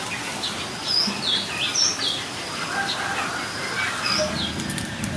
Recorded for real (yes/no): yes